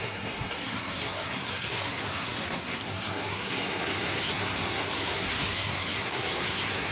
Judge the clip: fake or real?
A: fake